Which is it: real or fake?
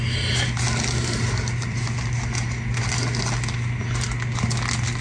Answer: real